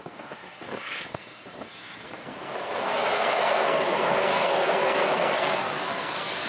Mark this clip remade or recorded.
remade